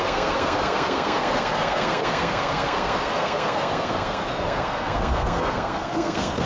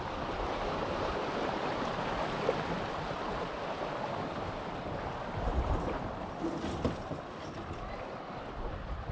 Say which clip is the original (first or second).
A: second